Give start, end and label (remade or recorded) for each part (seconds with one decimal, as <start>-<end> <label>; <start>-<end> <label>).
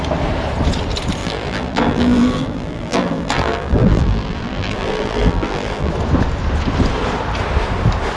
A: 0.0-1.2 recorded; 1.2-5.9 remade; 5.9-8.2 recorded